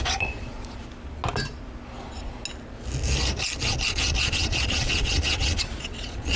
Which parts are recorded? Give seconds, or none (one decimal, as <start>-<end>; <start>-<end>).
0.8-3.9